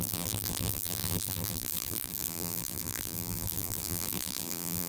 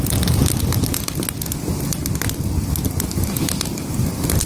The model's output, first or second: first